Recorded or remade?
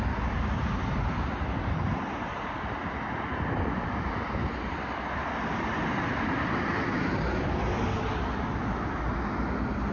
recorded